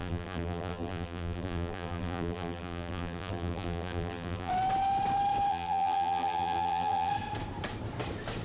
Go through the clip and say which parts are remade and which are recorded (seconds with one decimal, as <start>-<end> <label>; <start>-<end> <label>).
0.0-4.5 remade; 4.5-5.5 recorded; 5.5-7.1 remade; 7.1-8.4 recorded